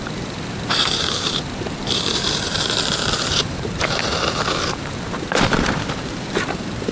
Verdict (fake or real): fake